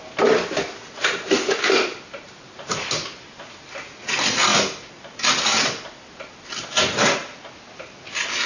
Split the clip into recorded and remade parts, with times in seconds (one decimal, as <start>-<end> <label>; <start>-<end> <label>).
0.0-8.5 recorded